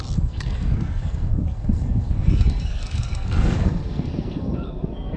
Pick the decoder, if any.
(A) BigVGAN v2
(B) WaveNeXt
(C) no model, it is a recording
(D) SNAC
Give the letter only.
D